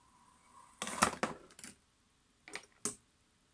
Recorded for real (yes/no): yes